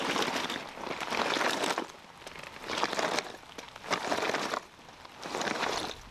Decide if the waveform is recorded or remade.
recorded